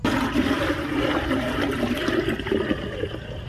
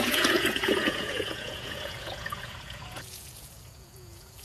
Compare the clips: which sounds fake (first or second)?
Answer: second